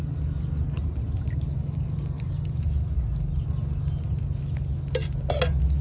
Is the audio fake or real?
real